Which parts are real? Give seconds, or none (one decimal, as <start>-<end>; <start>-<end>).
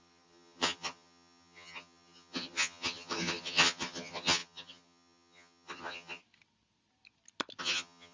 6.2-7.6